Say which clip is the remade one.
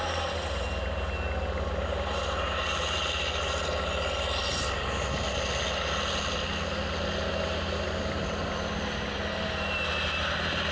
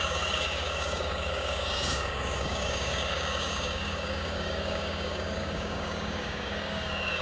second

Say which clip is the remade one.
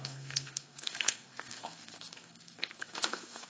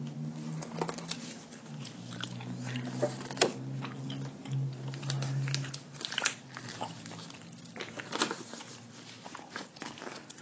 first